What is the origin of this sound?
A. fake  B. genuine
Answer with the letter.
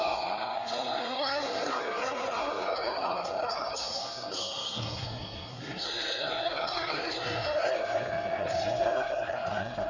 A